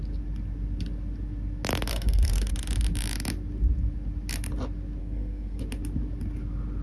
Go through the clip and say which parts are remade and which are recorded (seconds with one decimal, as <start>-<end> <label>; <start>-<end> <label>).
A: 0.0-1.9 recorded; 1.9-2.5 remade; 2.5-5.0 recorded; 5.0-5.6 remade; 5.6-6.8 recorded